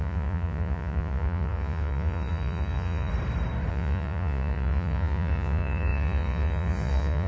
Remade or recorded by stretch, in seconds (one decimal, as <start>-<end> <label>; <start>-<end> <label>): 0.0-3.1 remade; 3.1-3.7 recorded; 3.7-7.3 remade